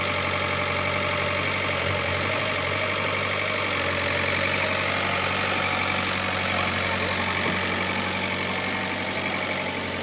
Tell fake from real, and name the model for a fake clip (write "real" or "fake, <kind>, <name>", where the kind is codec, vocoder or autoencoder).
real